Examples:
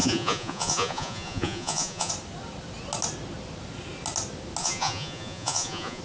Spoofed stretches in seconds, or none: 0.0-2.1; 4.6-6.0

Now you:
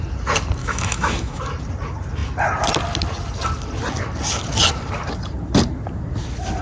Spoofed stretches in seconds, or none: 0.6-1.4

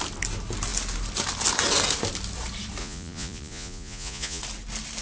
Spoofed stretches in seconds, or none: 2.8-4.4

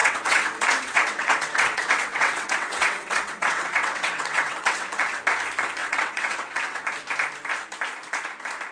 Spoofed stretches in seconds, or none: 0.0-5.2; 5.8-6.8

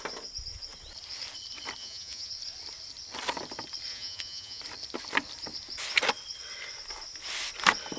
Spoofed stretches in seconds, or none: 1.8-2.3; 3.9-4.6

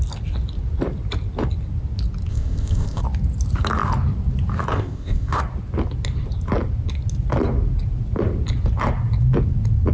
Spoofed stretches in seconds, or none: 2.3-3.0; 4.7-5.4